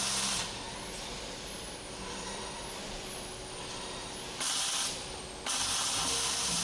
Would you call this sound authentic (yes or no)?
yes